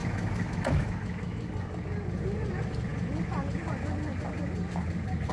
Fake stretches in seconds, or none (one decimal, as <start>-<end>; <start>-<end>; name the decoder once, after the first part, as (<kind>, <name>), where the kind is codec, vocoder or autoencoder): 0.0-1.5 (autoencoder, DAC-VAE)